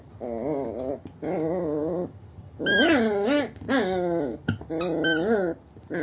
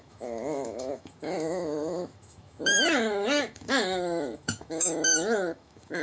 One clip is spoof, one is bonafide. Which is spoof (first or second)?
second